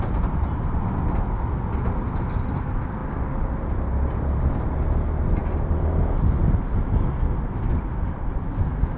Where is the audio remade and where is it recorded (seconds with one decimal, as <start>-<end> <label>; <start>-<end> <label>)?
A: 0.0-9.0 recorded